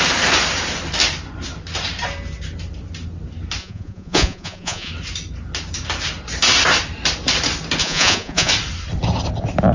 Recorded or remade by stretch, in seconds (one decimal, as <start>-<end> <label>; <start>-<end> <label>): 0.0-3.6 recorded; 3.6-4.9 remade; 4.9-7.8 recorded; 7.8-8.5 remade; 8.5-9.7 recorded